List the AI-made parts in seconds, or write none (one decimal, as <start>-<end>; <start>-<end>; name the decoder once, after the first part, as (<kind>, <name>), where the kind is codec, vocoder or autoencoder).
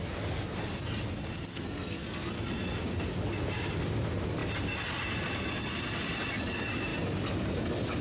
1.5-2.3 (codec, SNAC)